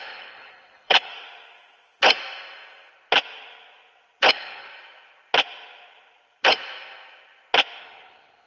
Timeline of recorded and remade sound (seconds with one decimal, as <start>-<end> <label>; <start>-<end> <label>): 0.0-1.1 remade; 1.1-4.3 recorded; 4.3-4.7 remade; 4.7-7.8 recorded; 7.8-8.5 remade